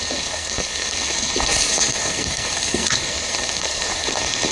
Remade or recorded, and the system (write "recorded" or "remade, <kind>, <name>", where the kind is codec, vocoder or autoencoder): remade, codec, SNAC